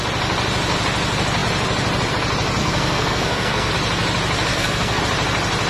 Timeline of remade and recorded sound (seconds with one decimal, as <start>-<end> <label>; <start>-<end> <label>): 0.0-2.6 recorded; 2.6-3.7 remade; 3.7-4.5 recorded; 4.5-5.0 remade; 5.0-5.7 recorded